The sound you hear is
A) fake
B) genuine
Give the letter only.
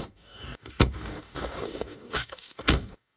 A